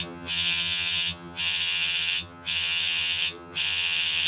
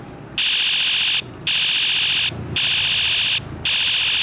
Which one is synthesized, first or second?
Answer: first